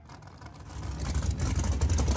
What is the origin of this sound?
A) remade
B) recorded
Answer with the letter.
B